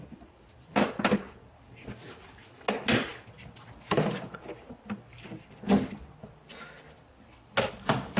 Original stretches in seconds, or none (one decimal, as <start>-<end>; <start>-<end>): 0.0-8.2